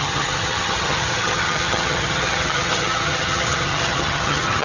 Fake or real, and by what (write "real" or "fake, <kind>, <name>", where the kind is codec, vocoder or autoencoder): fake, vocoder, HiFi-GAN